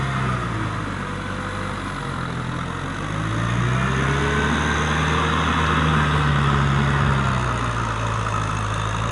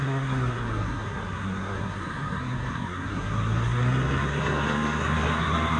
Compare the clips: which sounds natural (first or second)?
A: first